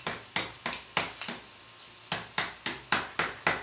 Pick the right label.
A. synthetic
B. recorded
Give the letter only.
B